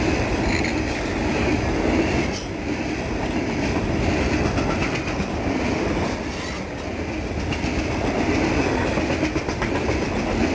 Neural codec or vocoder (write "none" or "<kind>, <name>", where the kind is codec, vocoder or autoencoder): none